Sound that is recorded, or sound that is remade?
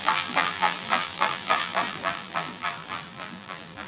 remade